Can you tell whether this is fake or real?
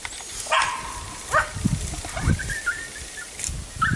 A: real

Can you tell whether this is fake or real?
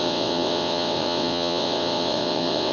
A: fake